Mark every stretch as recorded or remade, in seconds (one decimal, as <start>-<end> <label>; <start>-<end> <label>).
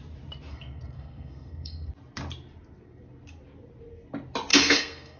0.0-0.5 recorded; 0.5-1.9 remade; 1.9-4.5 recorded; 4.5-5.2 remade